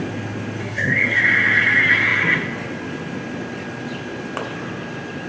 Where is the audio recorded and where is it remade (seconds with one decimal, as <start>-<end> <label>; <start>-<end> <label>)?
0.0-0.6 recorded; 0.6-1.2 remade; 1.2-5.3 recorded

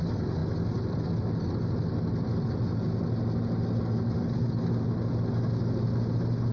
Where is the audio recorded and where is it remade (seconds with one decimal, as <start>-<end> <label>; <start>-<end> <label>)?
0.0-6.5 recorded

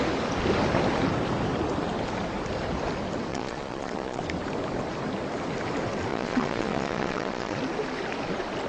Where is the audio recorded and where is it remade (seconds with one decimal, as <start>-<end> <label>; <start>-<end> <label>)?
0.0-3.3 recorded; 3.3-4.2 remade; 4.2-6.1 recorded; 6.1-7.6 remade; 7.6-8.7 recorded

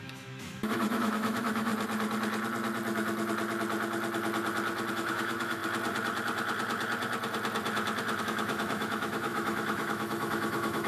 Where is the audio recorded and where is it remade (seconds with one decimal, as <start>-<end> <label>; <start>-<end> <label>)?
0.0-1.7 remade; 1.7-4.9 recorded; 4.9-5.6 remade; 5.6-8.2 recorded; 8.2-10.9 remade

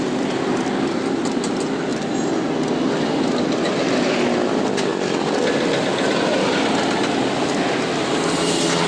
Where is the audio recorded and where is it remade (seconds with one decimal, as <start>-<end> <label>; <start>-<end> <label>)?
0.0-8.9 recorded

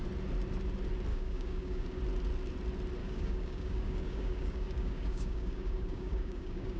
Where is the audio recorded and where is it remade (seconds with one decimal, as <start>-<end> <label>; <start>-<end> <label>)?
0.0-1.1 recorded; 1.1-2.0 remade; 2.0-3.0 recorded; 3.0-6.8 remade

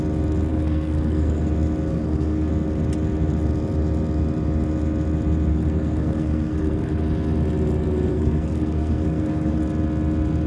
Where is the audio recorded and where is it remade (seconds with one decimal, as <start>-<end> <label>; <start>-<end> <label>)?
0.0-0.5 recorded; 0.5-1.5 remade; 1.5-1.9 recorded; 1.9-2.5 remade; 2.5-5.5 recorded; 5.5-7.0 remade; 7.0-8.1 recorded; 8.1-9.6 remade; 9.6-10.5 recorded